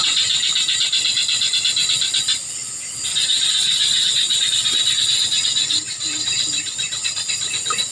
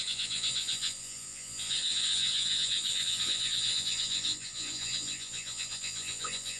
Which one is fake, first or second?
second